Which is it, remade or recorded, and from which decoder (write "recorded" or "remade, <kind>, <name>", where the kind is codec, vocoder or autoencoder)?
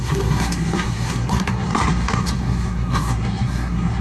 remade, codec, SNAC